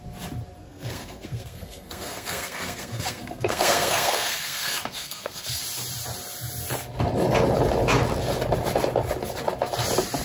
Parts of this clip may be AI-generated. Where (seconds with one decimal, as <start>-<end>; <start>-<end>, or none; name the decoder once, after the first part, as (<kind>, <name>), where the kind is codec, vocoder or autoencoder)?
0.6-5.6 (codec, SNAC)